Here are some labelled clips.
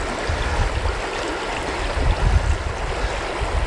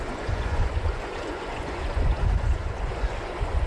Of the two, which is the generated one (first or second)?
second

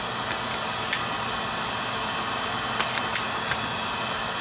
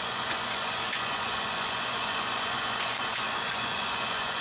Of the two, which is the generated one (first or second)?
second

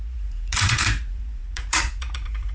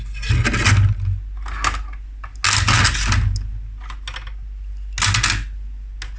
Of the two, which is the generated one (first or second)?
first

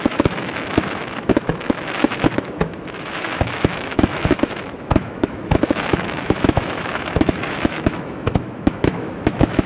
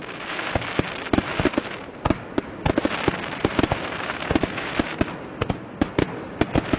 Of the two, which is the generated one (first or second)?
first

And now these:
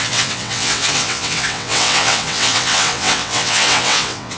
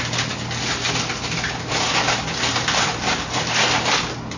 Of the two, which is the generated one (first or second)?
first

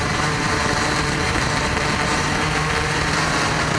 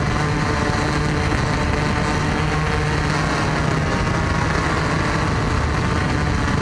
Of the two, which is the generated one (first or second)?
first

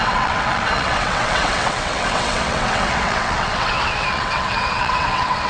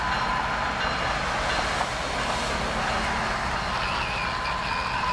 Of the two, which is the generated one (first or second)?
first